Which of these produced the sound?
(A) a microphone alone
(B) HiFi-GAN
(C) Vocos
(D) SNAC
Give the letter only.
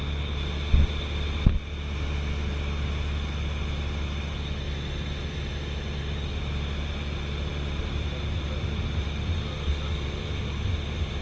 A